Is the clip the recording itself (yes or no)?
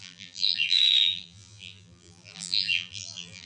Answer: no